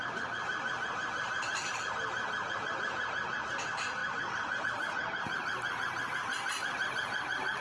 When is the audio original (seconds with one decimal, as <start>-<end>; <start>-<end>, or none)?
0.0-7.6